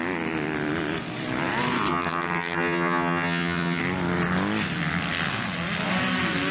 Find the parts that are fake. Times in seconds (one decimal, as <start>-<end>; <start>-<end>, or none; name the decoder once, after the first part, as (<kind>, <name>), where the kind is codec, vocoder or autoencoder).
1.9-3.8 (vocoder, HiFi-GAN)